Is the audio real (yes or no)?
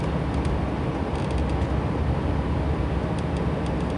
yes